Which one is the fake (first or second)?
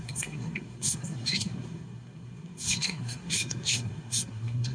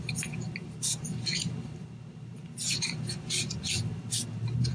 first